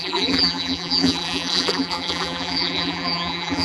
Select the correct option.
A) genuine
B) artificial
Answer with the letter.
B